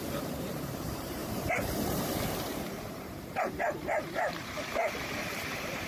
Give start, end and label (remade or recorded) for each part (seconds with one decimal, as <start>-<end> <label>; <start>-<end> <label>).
0.0-5.9 remade